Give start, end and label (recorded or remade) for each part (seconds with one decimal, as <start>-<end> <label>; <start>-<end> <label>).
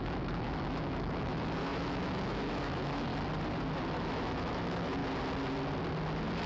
0.0-3.1 remade; 3.1-3.8 recorded; 3.8-5.0 remade; 5.0-6.5 recorded